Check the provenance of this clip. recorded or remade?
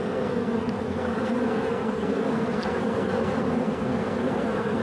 remade